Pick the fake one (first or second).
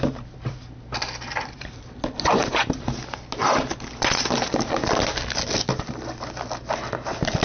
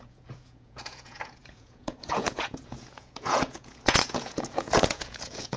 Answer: second